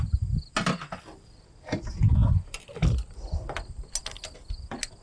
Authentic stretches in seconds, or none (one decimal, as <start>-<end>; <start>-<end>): 0.0-5.0